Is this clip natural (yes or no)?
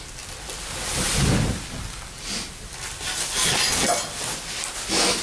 yes